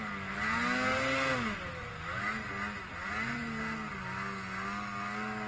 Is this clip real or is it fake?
real